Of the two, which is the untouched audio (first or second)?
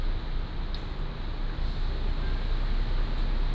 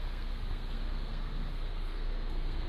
first